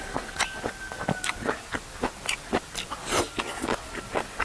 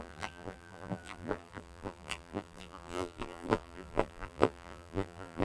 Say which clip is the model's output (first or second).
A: second